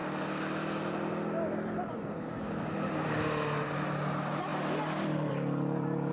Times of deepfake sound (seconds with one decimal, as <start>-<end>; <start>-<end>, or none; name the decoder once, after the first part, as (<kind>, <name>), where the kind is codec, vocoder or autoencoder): none